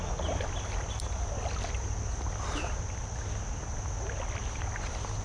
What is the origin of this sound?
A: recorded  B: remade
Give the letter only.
A